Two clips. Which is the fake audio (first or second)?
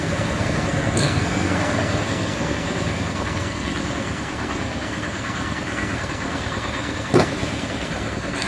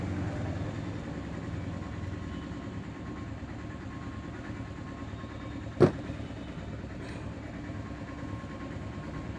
first